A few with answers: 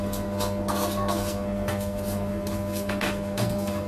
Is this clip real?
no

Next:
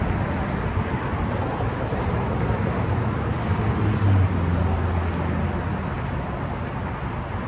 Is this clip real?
yes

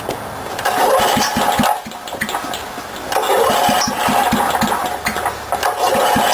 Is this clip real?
yes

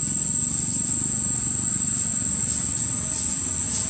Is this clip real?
yes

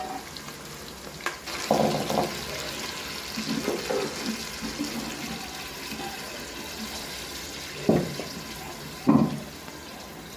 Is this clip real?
yes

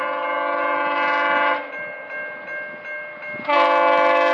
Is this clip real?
yes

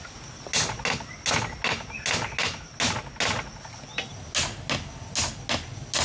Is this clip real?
yes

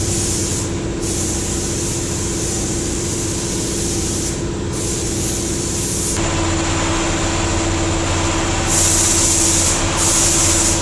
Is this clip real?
yes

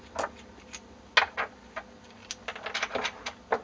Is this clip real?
yes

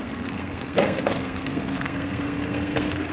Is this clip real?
no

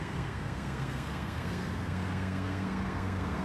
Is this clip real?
no